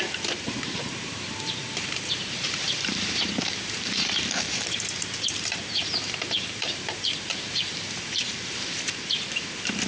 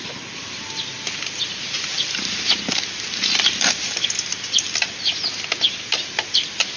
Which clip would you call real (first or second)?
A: second